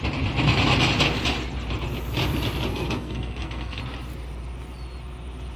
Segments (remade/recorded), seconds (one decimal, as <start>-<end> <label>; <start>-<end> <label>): 0.0-2.7 recorded; 2.7-3.8 remade; 3.8-5.6 recorded